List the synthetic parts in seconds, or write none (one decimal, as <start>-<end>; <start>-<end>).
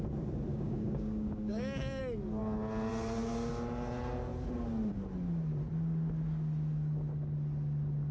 0.5-2.0